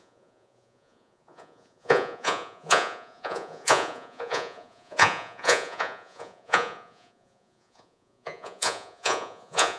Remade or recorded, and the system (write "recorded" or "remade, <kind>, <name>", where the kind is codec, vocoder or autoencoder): remade, vocoder, Vocos